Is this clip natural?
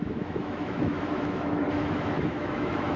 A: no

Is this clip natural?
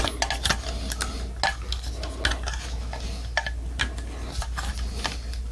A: yes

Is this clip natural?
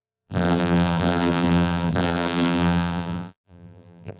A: no